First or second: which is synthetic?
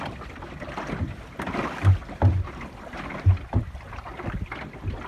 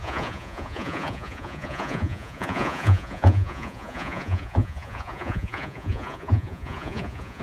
second